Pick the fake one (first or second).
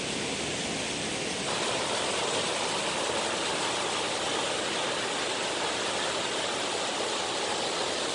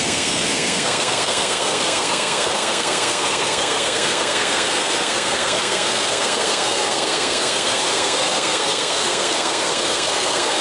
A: second